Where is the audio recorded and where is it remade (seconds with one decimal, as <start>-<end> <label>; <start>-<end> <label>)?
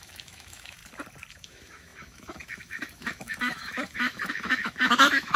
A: 0.0-0.8 remade; 0.8-1.3 recorded; 1.3-5.4 remade